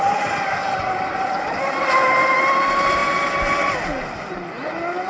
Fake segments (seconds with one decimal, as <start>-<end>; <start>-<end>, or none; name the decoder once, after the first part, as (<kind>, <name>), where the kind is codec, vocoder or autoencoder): none